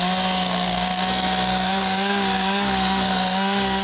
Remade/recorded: remade